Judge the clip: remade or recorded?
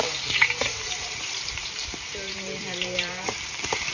remade